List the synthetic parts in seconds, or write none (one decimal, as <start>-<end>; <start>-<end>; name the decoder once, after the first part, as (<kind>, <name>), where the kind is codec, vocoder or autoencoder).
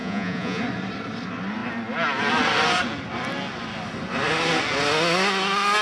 0.0-0.6 (vocoder, Vocos)